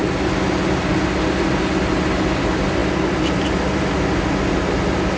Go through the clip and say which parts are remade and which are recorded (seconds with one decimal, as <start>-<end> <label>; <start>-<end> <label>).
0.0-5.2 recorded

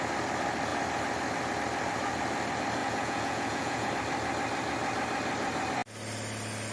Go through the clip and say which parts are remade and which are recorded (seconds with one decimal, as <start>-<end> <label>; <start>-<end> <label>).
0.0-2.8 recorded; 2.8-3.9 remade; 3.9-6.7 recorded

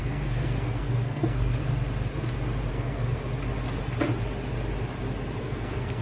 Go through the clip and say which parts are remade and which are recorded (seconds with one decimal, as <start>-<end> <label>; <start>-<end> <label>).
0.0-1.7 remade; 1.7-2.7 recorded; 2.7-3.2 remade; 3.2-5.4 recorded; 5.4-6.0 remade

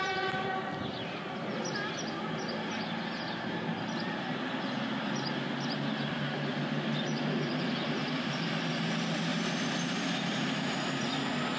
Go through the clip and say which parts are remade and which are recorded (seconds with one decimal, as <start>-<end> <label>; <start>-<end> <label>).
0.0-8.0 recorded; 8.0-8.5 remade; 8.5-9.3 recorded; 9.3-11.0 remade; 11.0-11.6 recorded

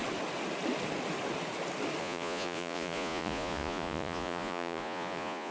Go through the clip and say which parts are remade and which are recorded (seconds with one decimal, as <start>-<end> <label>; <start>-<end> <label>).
0.0-2.0 recorded; 2.0-5.5 remade

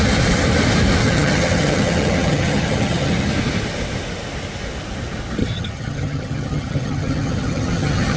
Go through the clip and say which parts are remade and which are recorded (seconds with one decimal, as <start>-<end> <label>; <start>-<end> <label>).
0.0-1.0 recorded; 1.0-3.3 remade; 3.3-5.4 recorded; 5.4-8.2 remade